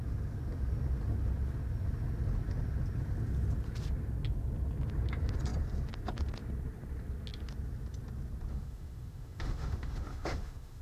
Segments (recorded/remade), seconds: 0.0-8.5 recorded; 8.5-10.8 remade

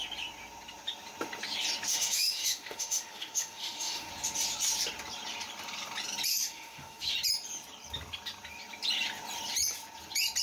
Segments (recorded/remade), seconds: 0.0-1.9 recorded; 1.9-4.1 remade; 4.1-6.3 recorded; 6.3-7.1 remade; 7.1-10.4 recorded

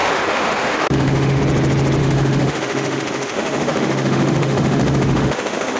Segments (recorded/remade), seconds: 0.0-1.4 remade; 1.4-2.0 recorded; 2.0-5.8 remade

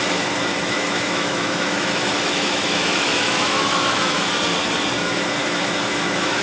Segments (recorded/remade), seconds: 0.0-0.5 recorded; 0.5-4.3 remade; 4.3-5.4 recorded; 5.4-6.4 remade

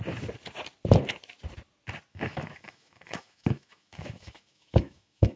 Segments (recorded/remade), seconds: 0.0-2.1 recorded; 2.1-5.4 remade

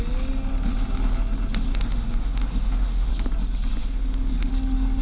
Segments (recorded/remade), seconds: 0.0-1.7 recorded; 1.7-3.1 remade; 3.1-3.8 recorded; 3.8-4.5 remade; 4.5-5.0 recorded